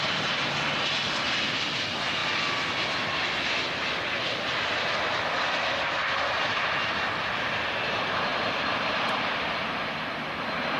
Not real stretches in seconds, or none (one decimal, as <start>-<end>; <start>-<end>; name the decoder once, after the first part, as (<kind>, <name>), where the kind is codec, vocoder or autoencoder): 8.3-9.7 (vocoder, BigVGAN v2)